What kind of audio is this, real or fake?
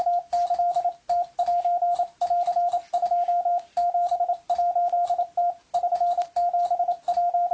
real